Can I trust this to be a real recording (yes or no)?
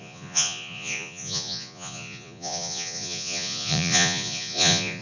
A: no